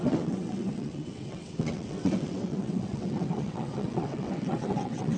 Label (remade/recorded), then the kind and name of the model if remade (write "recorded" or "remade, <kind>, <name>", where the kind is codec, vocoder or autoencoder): remade, vocoder, WaveNeXt